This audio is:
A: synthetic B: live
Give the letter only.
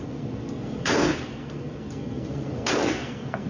A